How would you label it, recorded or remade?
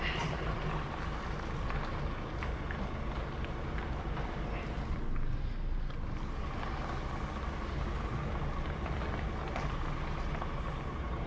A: recorded